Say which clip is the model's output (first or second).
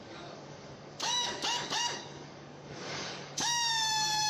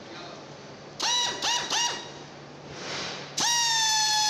first